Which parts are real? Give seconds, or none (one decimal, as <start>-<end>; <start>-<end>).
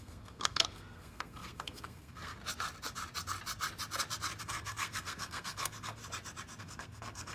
2.4-4.4; 6.0-6.6